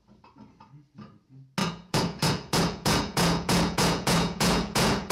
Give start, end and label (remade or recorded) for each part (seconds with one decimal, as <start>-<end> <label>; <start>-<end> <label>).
0.0-1.6 recorded; 1.6-5.1 remade